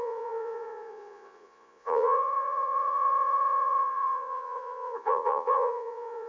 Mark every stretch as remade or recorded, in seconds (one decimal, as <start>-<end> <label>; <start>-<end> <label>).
0.0-6.3 remade